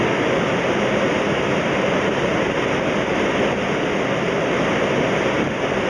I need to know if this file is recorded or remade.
recorded